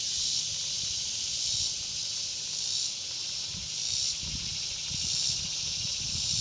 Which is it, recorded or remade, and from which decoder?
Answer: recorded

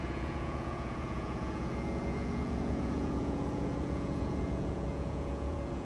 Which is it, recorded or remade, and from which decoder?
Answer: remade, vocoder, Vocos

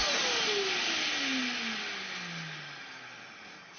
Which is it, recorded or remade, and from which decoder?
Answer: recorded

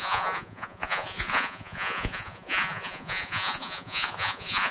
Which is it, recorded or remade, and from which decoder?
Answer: remade, vocoder, Vocos